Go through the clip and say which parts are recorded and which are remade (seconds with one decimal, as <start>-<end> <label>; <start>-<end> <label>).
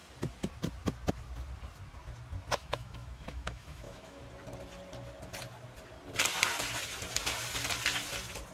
0.0-2.6 recorded; 2.6-4.2 remade; 4.2-8.5 recorded